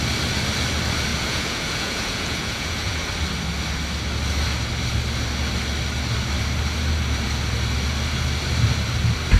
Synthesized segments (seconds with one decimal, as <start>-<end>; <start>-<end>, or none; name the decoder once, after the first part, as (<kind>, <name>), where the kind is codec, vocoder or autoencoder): 1.1-3.1 (vocoder, Vocos)